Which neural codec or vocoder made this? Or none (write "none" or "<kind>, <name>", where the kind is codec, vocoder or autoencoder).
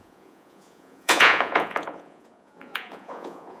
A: vocoder, Vocos